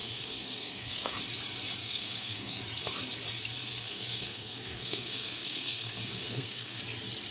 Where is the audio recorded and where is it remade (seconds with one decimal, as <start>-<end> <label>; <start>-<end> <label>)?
0.0-1.2 remade; 1.2-1.8 recorded; 1.8-2.6 remade; 2.6-3.6 recorded; 3.6-6.8 remade; 6.8-7.3 recorded